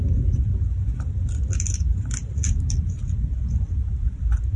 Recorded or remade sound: recorded